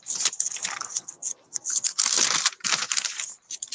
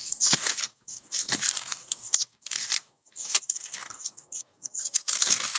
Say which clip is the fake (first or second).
second